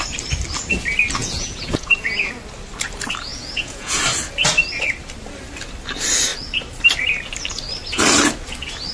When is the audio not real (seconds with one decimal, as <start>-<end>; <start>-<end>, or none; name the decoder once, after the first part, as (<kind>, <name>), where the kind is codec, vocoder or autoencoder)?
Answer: 1.2-2.3 (vocoder, Vocos); 3.3-4.0